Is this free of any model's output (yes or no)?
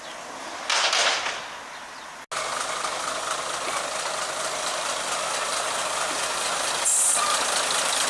yes